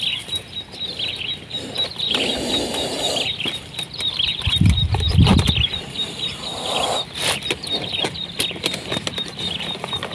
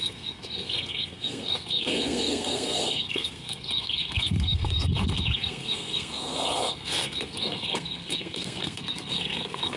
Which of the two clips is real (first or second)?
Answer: first